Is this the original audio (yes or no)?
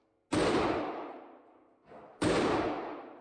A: yes